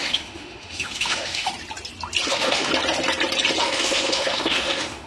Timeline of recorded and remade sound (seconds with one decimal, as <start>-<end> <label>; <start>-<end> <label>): 0.0-1.5 remade; 1.5-2.3 recorded; 2.3-2.7 remade; 2.7-3.6 recorded; 3.6-5.1 remade

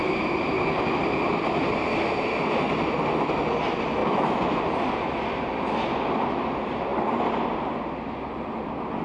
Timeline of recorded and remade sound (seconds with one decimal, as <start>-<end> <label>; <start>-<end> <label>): 0.0-4.0 recorded; 4.0-4.6 remade; 4.6-9.0 recorded